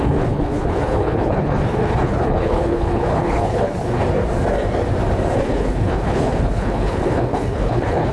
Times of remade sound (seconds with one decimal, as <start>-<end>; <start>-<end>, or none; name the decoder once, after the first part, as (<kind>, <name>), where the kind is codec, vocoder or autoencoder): 0.0-4.0 (codec, HILCodec); 5.4-8.1